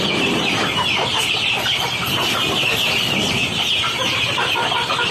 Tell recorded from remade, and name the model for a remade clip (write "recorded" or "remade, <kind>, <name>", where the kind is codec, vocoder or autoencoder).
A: recorded